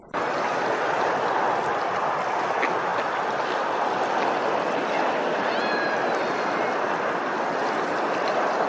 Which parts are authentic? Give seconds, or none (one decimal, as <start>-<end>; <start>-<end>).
0.0-8.7